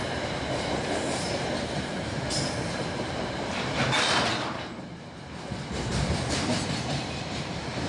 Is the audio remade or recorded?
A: remade